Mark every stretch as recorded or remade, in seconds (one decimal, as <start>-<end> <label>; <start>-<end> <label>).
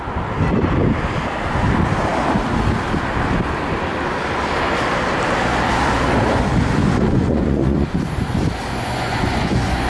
0.0-6.8 recorded; 6.8-7.9 remade; 7.9-8.7 recorded; 8.7-9.9 remade